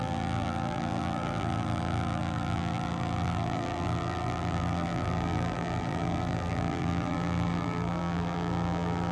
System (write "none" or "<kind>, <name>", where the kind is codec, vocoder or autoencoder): vocoder, BigVGAN v2